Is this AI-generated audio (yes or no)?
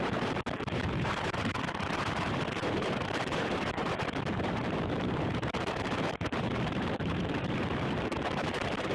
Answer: yes